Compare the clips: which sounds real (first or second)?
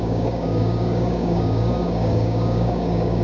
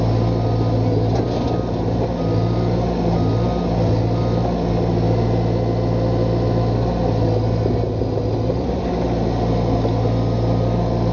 second